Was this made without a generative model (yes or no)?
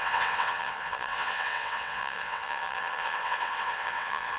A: no